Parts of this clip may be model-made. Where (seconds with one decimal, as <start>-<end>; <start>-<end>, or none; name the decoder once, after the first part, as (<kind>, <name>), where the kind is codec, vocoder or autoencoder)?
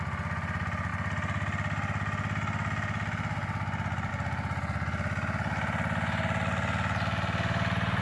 none